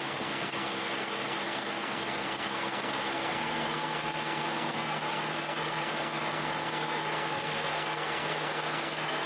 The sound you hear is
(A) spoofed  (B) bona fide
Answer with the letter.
A